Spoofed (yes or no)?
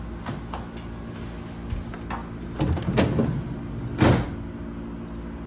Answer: no